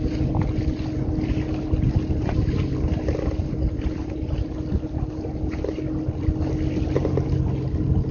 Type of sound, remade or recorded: recorded